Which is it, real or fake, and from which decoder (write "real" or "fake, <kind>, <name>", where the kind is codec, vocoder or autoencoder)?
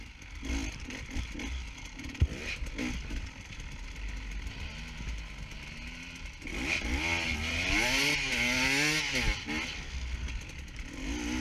real